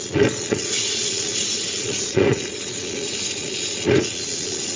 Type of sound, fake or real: fake